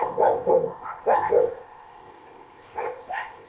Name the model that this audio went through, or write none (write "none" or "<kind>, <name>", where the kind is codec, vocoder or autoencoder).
codec, ZipCodec